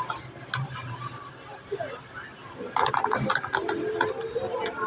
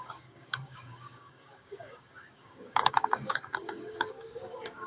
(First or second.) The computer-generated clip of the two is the second